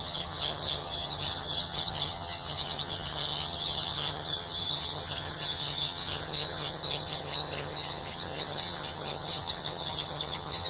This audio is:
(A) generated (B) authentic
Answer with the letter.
A